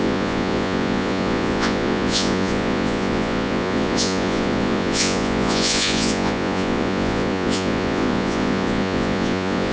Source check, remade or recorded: remade